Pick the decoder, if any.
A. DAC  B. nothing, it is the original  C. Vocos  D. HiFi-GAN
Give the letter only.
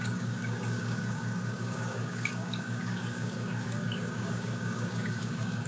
A